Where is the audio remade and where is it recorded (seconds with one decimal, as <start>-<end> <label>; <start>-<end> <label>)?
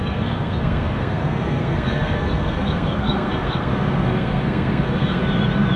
0.0-5.2 remade; 5.2-5.8 recorded